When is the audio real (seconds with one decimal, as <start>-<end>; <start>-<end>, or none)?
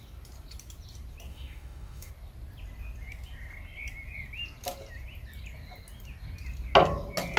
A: 0.0-1.3; 2.1-7.4